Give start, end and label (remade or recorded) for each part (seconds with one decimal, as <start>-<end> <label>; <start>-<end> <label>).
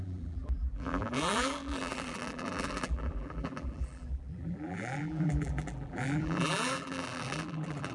0.0-7.9 remade